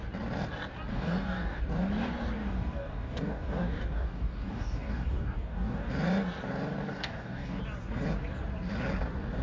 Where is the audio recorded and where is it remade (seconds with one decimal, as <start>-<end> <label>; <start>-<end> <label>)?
0.0-0.9 recorded; 0.9-1.6 remade; 1.6-2.4 recorded; 2.4-5.9 remade; 5.9-6.9 recorded; 6.9-7.6 remade; 7.6-9.4 recorded